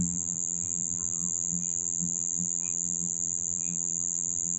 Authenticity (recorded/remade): remade